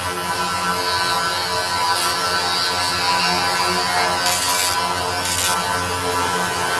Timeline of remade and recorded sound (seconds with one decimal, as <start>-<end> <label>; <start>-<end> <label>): 0.0-6.8 recorded